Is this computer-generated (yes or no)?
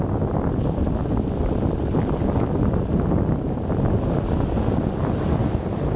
no